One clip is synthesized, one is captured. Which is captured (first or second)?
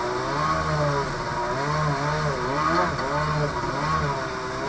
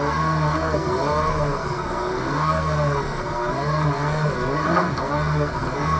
first